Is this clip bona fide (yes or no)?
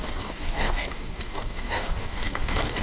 no